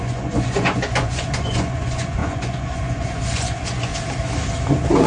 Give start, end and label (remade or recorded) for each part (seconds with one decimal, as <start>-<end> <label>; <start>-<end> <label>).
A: 0.0-3.9 remade; 3.9-5.1 recorded